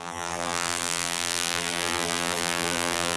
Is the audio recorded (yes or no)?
no